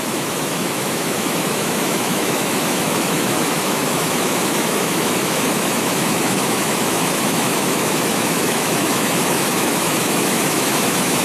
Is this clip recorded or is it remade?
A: remade